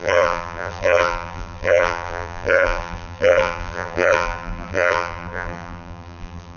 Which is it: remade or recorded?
remade